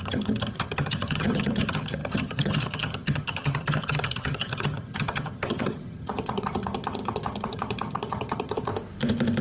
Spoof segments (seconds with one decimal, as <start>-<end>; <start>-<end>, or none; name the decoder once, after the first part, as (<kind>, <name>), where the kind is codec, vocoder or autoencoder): 0.0-8.7 (vocoder, HiFi-GAN)